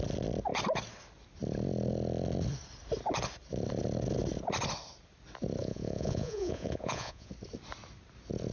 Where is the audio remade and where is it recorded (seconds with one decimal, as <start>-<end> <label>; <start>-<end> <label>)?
0.0-5.6 recorded; 5.6-7.3 remade; 7.3-8.5 recorded